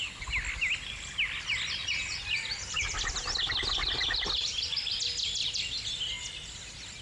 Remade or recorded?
recorded